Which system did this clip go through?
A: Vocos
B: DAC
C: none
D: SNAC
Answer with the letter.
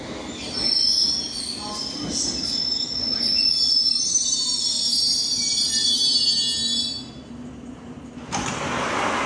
C